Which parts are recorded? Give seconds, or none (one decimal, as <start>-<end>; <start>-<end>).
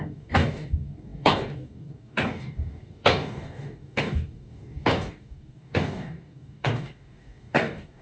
none